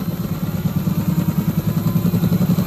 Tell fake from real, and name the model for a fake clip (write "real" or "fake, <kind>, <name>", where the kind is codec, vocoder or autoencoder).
real